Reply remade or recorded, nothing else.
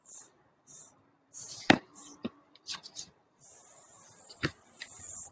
remade